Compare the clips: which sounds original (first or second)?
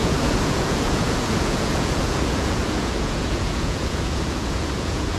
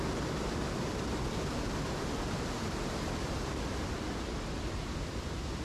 second